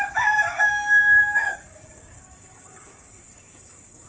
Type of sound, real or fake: fake